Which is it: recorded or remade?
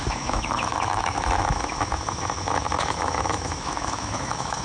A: remade